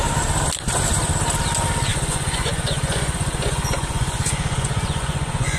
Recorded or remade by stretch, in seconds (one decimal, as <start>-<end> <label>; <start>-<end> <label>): 0.0-1.9 recorded; 1.9-5.6 remade